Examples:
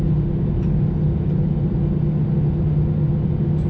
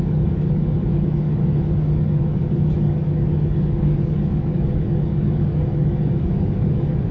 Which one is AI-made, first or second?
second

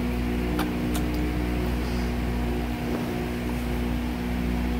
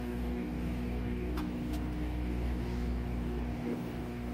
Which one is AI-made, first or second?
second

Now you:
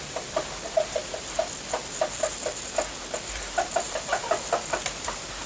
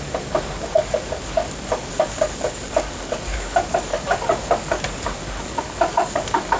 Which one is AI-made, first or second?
second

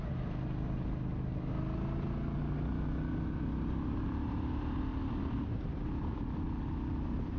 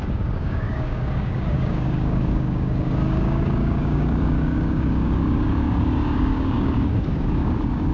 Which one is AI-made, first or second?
second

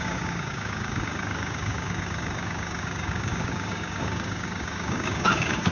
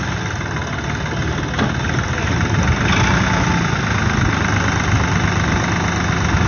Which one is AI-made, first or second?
first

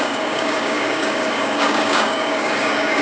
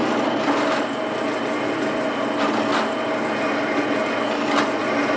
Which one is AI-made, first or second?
first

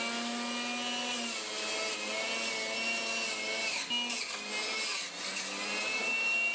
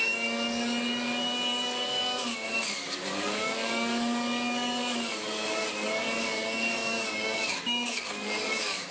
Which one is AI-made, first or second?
second